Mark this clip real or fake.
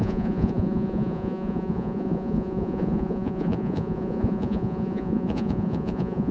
fake